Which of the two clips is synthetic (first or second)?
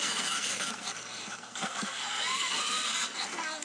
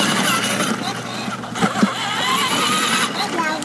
first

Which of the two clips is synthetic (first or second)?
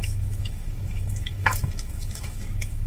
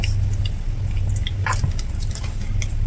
first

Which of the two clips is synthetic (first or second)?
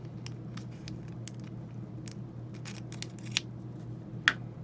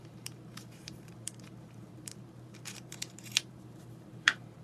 second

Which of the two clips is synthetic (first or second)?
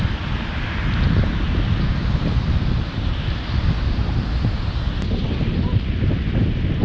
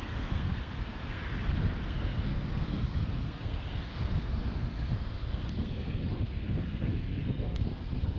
second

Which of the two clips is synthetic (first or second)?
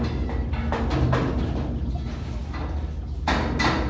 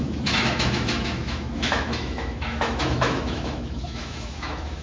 second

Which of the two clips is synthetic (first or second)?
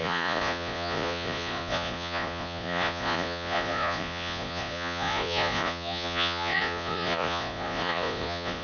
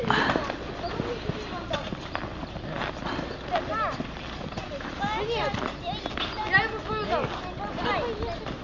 first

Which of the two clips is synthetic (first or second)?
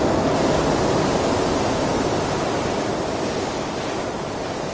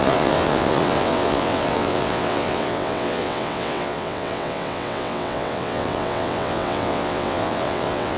second